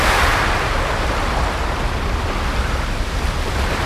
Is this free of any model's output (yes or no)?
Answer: yes